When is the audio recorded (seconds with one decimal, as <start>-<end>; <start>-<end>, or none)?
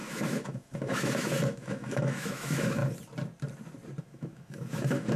2.8-4.0